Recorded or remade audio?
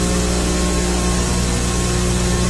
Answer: recorded